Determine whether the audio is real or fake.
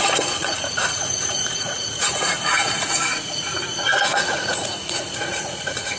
fake